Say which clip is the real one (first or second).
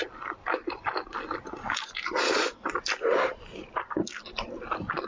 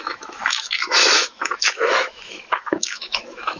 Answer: first